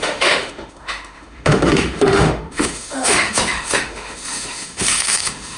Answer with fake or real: fake